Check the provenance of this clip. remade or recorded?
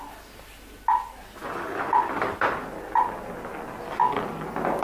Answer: recorded